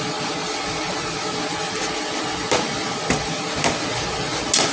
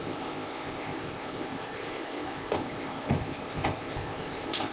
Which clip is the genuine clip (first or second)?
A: first